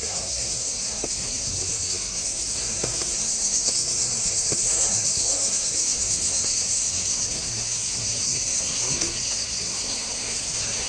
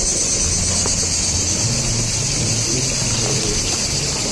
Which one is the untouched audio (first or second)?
second